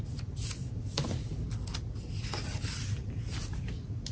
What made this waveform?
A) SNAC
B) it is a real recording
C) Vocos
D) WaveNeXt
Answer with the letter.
B